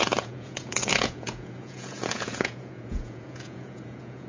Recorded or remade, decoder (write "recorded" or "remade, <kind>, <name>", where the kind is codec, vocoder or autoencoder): remade, vocoder, Vocos